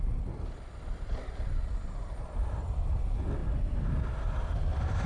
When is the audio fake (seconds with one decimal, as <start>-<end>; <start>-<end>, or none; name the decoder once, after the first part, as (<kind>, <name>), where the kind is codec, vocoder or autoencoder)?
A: none